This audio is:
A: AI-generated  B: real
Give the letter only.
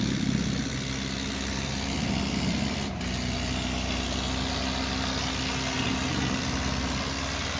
B